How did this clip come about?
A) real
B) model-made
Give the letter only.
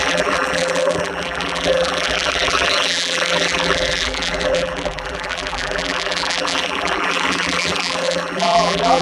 B